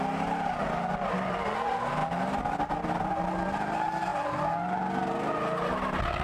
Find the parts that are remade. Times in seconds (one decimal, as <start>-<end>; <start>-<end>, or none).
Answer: none